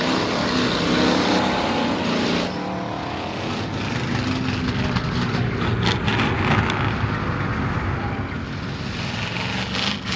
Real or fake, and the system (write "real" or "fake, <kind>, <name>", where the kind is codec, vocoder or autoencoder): real